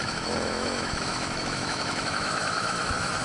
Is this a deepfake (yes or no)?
yes